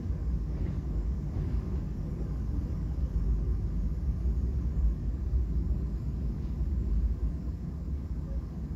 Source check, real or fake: fake